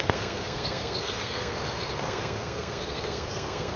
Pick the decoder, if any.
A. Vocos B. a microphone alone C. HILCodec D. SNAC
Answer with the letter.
D